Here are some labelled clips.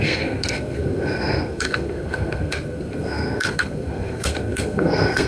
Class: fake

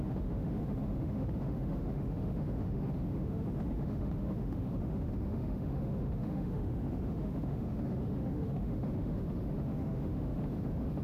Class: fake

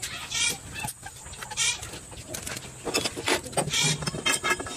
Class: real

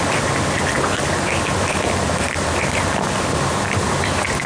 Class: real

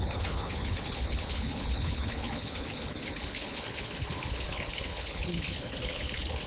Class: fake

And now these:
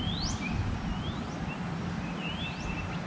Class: real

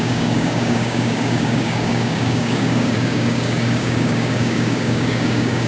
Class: fake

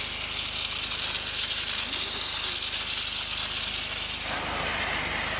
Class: real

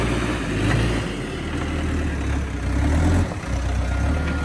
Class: real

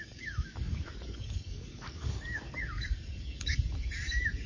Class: fake